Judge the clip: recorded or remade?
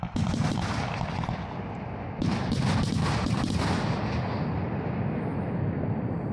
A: recorded